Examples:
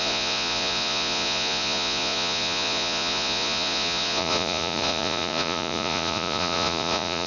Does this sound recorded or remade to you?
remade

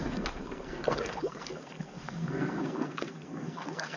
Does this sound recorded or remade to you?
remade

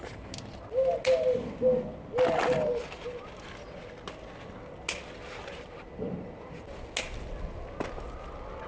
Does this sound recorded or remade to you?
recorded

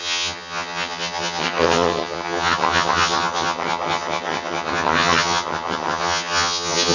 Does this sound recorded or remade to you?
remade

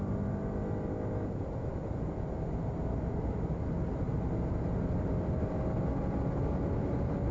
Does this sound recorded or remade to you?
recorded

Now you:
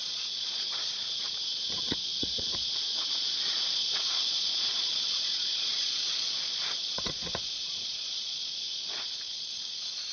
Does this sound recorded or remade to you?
remade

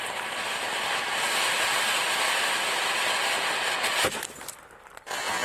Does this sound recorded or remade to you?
recorded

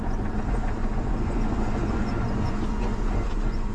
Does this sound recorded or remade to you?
remade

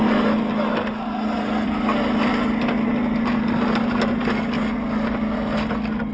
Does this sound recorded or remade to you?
recorded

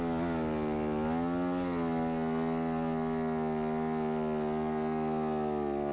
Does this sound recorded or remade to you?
recorded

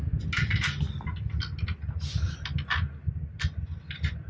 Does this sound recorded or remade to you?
recorded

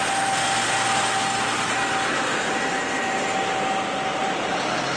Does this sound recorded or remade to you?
recorded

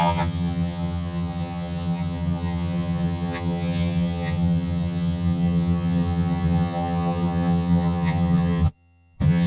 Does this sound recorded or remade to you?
remade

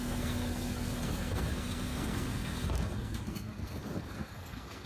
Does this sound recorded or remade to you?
remade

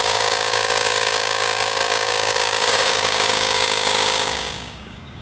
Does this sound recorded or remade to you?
remade